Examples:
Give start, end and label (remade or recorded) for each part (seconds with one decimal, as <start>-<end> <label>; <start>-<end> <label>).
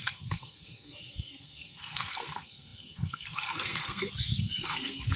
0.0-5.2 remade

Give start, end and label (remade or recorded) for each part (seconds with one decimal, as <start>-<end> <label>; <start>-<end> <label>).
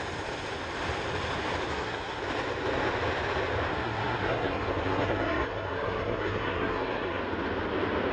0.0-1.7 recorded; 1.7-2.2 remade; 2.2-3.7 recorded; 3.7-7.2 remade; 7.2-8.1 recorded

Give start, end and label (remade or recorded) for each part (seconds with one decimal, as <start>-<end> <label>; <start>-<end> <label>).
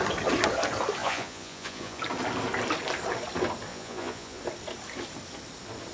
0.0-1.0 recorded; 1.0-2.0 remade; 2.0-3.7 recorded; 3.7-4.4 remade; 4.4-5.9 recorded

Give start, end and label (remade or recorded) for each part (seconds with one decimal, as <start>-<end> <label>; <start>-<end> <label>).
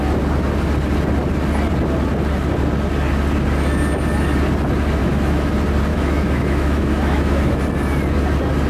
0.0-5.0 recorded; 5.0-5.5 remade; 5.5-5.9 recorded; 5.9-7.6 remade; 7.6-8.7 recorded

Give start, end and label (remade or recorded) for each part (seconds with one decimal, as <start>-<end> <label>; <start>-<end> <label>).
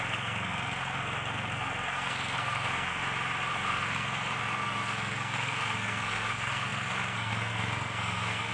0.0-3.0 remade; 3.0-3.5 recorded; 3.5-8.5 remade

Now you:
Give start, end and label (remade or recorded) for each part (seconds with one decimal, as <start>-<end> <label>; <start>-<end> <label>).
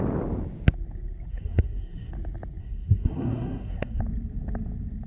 0.0-1.3 recorded; 1.3-2.1 remade; 2.1-2.6 recorded; 2.6-4.0 remade; 4.0-5.1 recorded